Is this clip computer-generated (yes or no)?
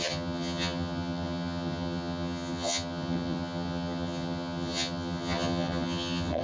yes